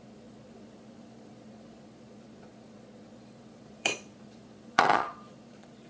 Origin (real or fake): fake